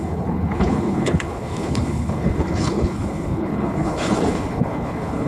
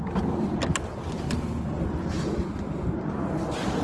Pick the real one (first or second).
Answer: second